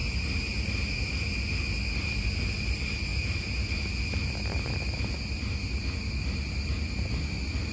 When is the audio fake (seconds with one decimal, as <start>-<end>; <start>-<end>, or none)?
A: none